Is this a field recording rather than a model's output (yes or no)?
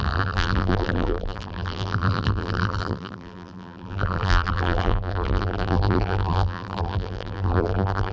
no